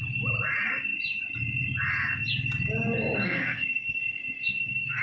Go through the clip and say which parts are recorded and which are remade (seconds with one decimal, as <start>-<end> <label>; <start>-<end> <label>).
0.0-3.2 recorded; 3.2-5.0 remade